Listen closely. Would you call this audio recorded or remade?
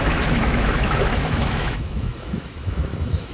remade